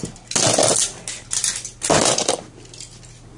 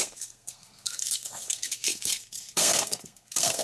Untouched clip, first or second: first